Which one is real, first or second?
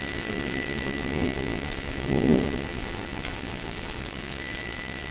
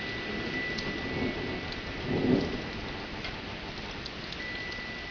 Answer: second